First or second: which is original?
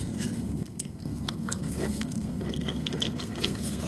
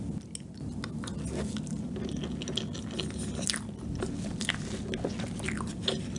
second